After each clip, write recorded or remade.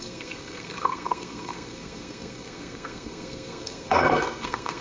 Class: remade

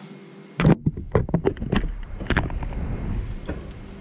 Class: recorded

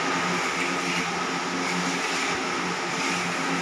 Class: recorded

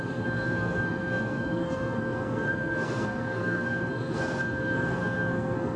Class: remade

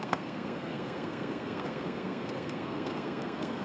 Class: remade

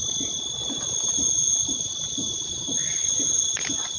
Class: recorded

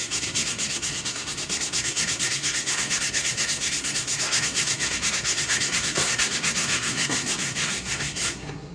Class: remade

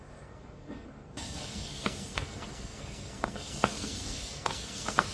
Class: remade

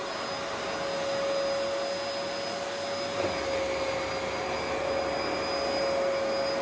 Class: recorded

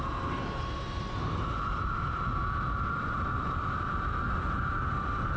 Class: recorded